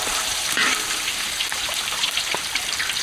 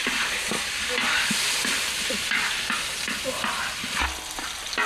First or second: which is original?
second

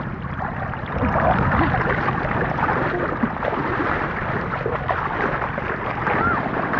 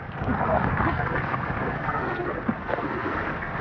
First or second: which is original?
first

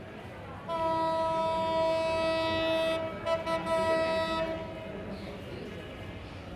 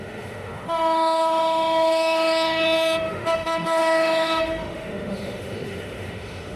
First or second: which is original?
first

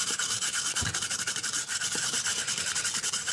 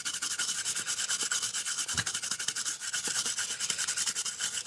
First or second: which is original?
second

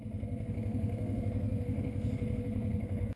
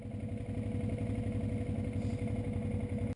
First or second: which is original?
second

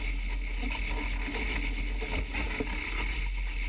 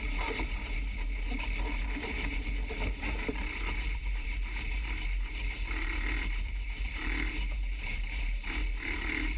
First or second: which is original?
first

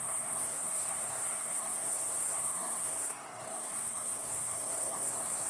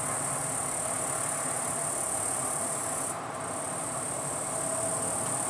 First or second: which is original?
second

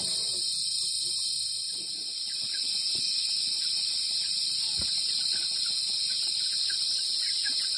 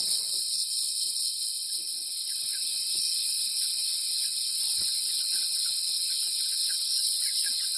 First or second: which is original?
first